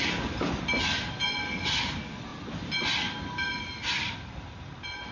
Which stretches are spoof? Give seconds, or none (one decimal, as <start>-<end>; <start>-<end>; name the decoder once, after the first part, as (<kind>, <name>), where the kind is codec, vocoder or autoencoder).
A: none